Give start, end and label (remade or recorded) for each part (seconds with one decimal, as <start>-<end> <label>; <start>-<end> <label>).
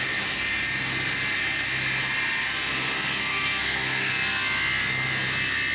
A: 0.0-3.3 recorded; 3.3-4.1 remade; 4.1-5.7 recorded